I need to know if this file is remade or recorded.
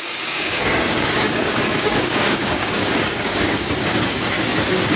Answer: remade